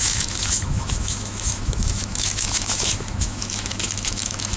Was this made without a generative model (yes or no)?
no